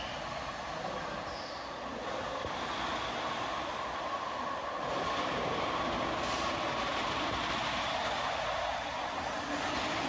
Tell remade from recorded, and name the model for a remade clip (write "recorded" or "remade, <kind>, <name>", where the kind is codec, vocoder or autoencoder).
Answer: recorded